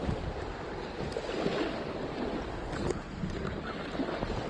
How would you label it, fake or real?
real